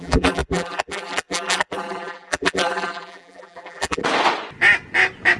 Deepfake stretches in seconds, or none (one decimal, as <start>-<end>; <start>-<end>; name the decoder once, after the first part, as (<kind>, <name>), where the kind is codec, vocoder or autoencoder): 0.0-4.0 (vocoder, BigVGAN v2)